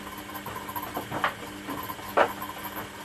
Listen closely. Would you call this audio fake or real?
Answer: real